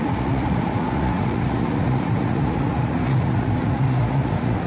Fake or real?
fake